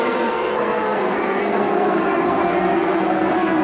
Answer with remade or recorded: remade